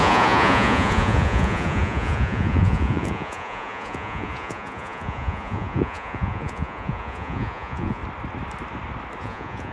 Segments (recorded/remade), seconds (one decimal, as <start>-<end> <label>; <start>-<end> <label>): 0.0-8.0 remade; 8.0-9.2 recorded; 9.2-9.7 remade